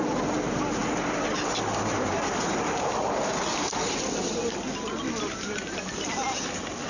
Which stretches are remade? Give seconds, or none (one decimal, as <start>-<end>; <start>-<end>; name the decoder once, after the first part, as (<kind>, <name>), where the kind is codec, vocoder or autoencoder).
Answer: none